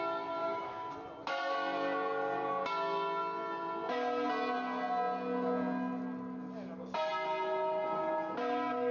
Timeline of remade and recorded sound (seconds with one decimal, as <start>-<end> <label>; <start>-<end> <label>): 0.0-0.4 recorded; 0.4-0.9 remade; 0.9-8.9 recorded